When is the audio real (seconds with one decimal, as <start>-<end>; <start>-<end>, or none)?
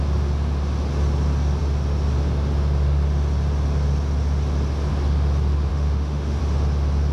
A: 0.0-5.7; 6.4-7.1